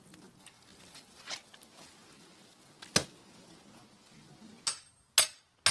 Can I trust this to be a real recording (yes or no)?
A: yes